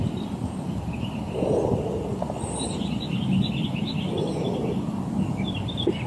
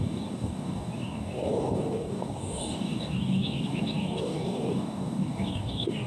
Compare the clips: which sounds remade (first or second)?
second